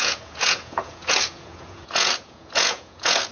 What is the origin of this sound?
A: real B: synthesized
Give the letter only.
B